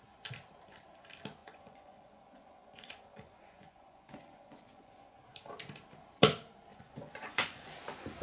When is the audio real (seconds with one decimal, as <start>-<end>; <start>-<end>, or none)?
0.0-1.4; 5.2-6.7; 7.7-8.2